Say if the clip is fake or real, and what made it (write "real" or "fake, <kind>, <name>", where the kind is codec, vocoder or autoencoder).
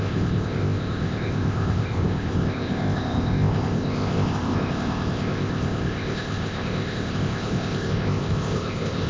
fake, codec, ZipCodec